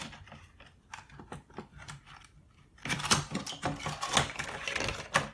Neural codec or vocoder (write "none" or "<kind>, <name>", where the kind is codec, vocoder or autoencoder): none